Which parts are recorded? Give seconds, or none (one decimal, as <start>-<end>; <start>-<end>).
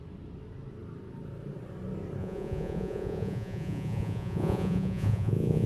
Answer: 0.0-2.2